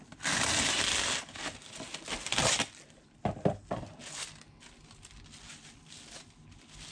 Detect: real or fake real